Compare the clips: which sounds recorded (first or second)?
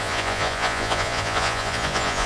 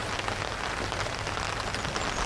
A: second